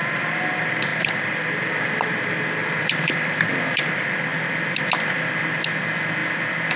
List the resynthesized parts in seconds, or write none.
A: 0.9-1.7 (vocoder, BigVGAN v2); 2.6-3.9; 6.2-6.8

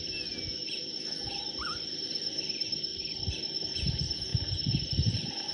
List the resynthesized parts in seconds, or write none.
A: 2.9-3.6 (vocoder, BigVGAN v2)

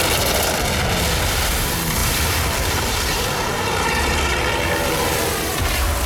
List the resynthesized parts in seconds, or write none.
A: 2.0-5.3 (vocoder, BigVGAN v2)

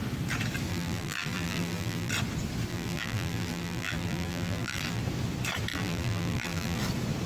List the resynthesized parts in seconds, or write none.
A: 0.7-2.1 (vocoder, BigVGAN v2); 2.7-5.0; 5.7-6.8

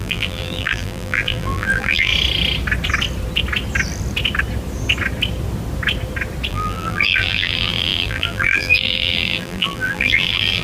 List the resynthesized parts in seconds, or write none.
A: 0.0-2.1 (vocoder, BigVGAN v2); 6.5-10.6

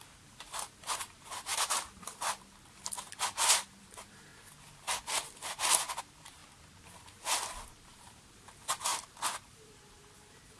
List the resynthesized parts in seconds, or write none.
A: 0.0-1.5 (vocoder, BigVGAN v2); 3.8-4.3; 6.0-6.4; 7.8-8.9; 9.5-10.6